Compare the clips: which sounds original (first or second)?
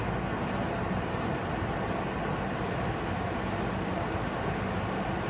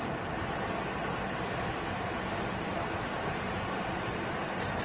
first